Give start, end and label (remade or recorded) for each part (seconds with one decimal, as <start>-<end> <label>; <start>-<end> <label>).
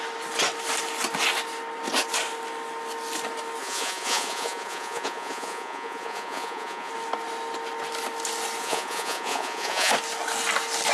0.0-3.6 recorded; 3.6-6.9 remade; 6.9-8.6 recorded; 8.6-9.9 remade; 9.9-10.9 recorded